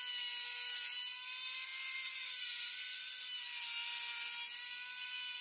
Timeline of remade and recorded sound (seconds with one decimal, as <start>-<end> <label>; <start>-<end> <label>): 0.0-1.7 recorded; 1.7-3.2 remade; 3.2-5.4 recorded